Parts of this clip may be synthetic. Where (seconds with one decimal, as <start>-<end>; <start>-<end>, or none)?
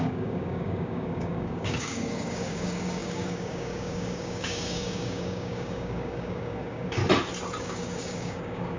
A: 0.0-7.0; 7.6-8.8